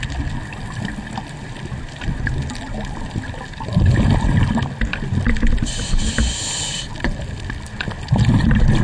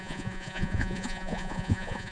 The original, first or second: first